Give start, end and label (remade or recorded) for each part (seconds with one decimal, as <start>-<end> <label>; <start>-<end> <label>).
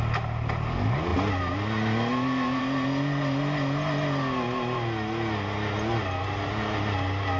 0.0-7.4 recorded